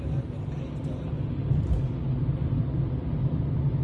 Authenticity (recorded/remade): recorded